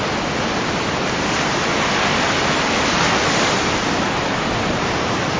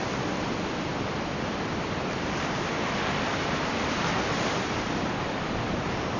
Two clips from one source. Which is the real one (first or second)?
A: first